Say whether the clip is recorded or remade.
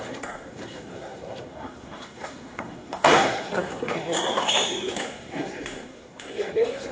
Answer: remade